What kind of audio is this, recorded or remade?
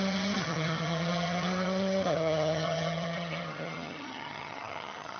remade